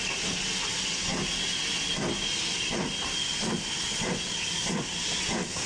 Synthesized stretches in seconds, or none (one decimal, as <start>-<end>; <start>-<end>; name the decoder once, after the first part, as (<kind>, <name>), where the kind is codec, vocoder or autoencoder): none